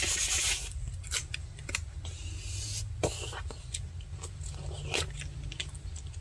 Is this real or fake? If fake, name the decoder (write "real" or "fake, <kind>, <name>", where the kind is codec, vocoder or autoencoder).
real